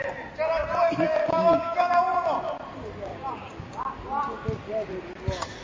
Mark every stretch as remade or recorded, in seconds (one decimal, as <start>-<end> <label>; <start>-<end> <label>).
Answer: 0.0-1.2 recorded; 1.2-1.9 remade; 1.9-3.1 recorded; 3.1-3.8 remade; 3.8-5.6 recorded